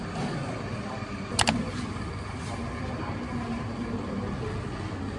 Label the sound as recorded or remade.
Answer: recorded